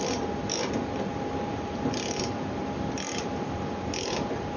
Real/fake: real